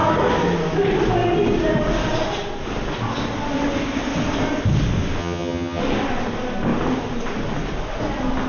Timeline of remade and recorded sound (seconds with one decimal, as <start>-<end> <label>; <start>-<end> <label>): 0.0-5.2 recorded; 5.2-5.8 remade; 5.8-8.5 recorded

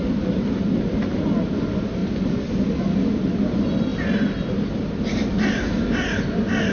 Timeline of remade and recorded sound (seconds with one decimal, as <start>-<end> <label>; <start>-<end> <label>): 0.0-6.7 recorded

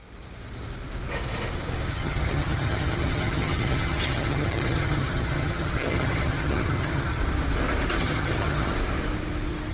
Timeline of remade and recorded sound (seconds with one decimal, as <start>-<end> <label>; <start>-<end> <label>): 0.0-1.9 recorded; 1.9-7.2 remade; 7.2-8.0 recorded; 8.0-8.7 remade; 8.7-9.7 recorded